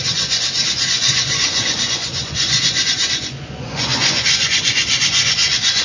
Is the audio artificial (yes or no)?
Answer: yes